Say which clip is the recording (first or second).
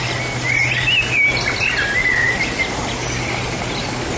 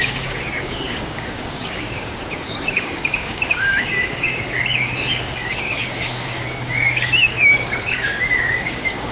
first